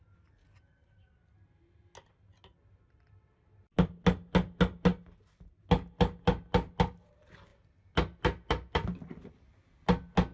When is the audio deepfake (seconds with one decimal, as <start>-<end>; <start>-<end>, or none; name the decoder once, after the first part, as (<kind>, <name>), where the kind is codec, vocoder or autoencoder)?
none

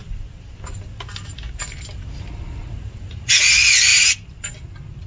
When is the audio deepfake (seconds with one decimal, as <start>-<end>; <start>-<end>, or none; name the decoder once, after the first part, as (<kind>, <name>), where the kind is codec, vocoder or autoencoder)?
3.1-3.9 (vocoder, Vocos)

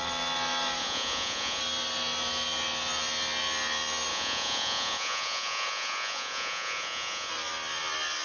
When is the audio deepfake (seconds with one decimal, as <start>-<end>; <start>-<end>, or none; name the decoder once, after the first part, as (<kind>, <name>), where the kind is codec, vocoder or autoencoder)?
0.8-1.6 (vocoder, Vocos); 4.1-7.3